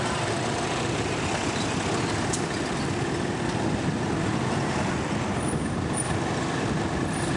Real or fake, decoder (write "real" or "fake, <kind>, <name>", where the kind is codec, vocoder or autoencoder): real